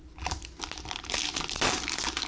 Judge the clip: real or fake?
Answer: real